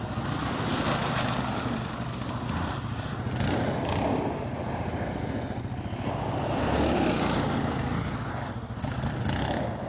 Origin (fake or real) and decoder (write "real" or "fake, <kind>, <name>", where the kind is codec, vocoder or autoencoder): real